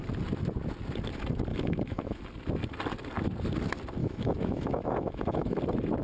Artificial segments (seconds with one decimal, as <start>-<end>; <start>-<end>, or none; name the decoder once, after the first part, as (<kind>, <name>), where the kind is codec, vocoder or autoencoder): 1.5-2.2 (autoencoder, DAC-VAE); 4.0-5.6